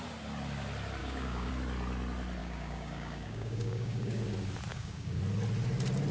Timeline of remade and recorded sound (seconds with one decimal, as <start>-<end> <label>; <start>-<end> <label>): 0.0-1.0 recorded; 1.0-1.5 remade; 1.5-2.4 recorded; 2.4-4.2 remade; 4.2-4.7 recorded; 4.7-5.2 remade; 5.2-6.1 recorded